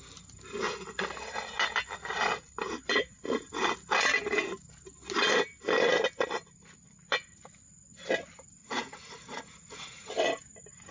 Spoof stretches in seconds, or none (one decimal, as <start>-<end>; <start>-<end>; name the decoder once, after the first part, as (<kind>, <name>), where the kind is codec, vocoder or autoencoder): 2.9-3.5 (vocoder, Vocos); 8.6-9.4